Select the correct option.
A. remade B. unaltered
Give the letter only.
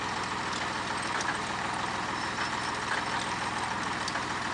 B